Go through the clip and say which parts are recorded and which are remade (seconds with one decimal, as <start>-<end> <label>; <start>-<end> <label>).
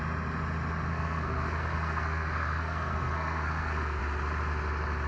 0.0-0.9 recorded; 0.9-4.0 remade; 4.0-5.1 recorded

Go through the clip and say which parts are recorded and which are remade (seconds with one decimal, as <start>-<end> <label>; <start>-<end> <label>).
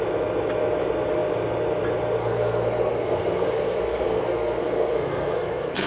0.0-2.2 recorded; 2.2-5.9 remade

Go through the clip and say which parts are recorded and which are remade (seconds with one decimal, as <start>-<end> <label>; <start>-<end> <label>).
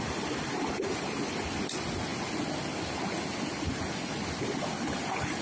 0.0-5.4 recorded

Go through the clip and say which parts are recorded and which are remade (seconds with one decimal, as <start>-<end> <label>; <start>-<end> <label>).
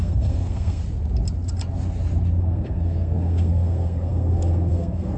0.0-0.8 remade; 0.8-2.4 recorded; 2.4-5.2 remade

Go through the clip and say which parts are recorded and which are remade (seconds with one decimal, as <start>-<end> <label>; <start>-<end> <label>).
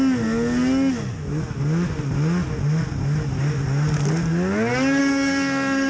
0.0-5.0 recorded; 5.0-5.9 remade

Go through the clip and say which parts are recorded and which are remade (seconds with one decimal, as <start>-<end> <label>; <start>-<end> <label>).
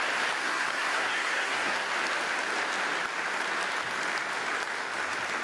0.0-0.4 recorded; 0.4-1.9 remade; 1.9-5.4 recorded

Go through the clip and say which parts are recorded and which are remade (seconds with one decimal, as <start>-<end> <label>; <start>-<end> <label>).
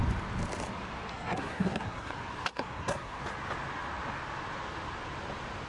0.0-1.1 recorded; 1.1-2.1 remade; 2.1-2.5 recorded; 2.5-3.2 remade; 3.2-5.7 recorded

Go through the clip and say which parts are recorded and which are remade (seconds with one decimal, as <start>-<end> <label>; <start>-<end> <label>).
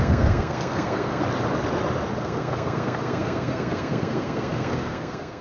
0.0-1.2 remade; 1.2-2.2 recorded; 2.2-5.4 remade